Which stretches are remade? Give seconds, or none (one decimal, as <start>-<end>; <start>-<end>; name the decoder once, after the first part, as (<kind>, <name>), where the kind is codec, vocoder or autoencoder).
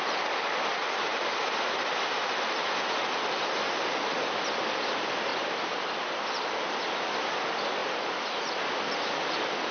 5.3-6.0 (vocoder, BigVGAN v2); 7.8-8.5